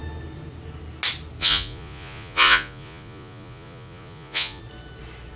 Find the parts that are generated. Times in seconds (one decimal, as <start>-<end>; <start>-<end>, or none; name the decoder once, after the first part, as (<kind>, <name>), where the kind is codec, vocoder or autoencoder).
1.4-4.6 (vocoder, Vocos)